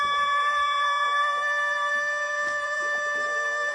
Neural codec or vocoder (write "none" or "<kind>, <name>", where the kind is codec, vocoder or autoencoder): vocoder, BigVGAN v2